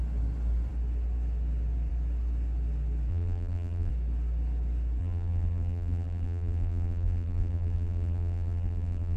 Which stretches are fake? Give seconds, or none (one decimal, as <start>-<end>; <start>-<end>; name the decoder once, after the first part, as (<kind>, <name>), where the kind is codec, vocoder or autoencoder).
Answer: 3.1-3.9 (vocoder, BigVGAN v2); 5.0-9.2